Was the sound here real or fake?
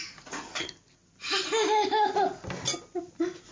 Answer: real